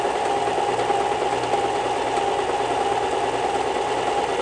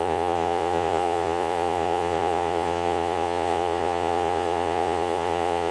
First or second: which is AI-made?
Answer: second